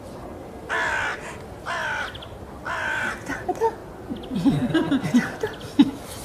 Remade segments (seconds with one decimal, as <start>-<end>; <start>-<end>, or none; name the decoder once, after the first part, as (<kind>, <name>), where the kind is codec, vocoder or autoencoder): 0.0-1.1 (vocoder, BigVGAN v2); 3.0-3.8; 4.7-6.2